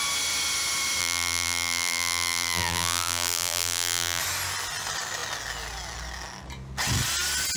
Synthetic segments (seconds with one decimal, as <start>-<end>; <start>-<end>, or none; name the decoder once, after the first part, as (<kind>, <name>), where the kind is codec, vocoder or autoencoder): 1.0-4.2 (vocoder, BigVGAN v2)